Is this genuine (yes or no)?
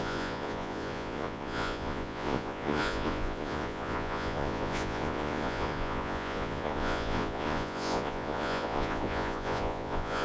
no